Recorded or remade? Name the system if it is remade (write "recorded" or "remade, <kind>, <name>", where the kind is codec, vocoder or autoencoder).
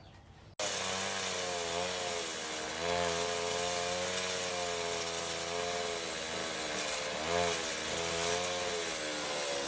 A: recorded